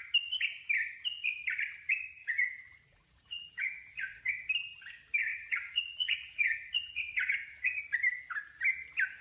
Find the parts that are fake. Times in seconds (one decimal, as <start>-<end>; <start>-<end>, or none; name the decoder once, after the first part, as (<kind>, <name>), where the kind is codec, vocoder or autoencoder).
2.2-4.2 (vocoder, Vocos); 5.3-7.8